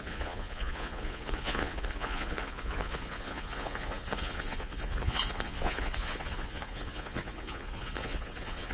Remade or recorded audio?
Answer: remade